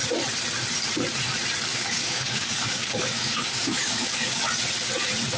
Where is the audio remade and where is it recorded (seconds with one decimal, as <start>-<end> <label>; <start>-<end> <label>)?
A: 0.0-1.7 recorded; 1.7-4.4 remade; 4.4-5.4 recorded